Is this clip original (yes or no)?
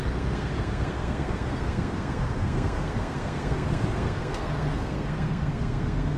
no